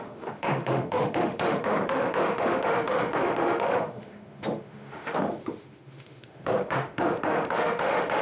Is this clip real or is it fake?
fake